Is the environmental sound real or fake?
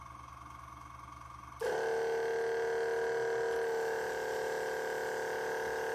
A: real